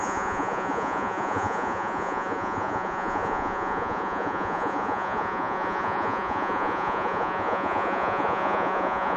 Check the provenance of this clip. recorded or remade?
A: remade